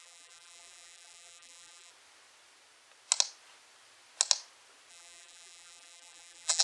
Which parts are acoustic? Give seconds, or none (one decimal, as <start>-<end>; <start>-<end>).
1.9-4.9